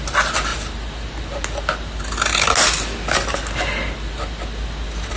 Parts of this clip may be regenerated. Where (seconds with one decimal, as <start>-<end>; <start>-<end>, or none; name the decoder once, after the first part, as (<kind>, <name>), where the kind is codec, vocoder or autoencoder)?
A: none